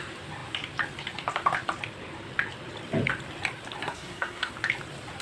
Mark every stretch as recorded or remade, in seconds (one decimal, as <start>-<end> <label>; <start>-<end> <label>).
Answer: 0.0-3.8 recorded; 3.8-4.5 remade; 4.5-5.2 recorded